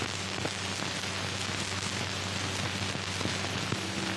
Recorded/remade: recorded